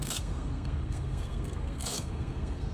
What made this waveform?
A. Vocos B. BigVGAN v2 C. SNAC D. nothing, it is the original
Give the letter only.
C